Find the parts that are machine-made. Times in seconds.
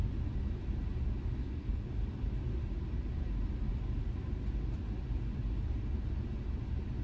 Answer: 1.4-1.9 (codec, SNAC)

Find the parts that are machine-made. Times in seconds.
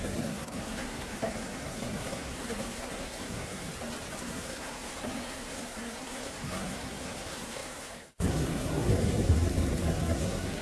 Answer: 0.0-3.7 (codec, SNAC); 4.2-10.6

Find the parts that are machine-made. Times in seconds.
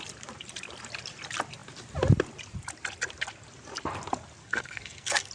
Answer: 4.4-5.3 (codec, SNAC)